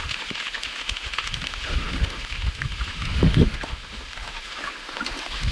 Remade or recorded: remade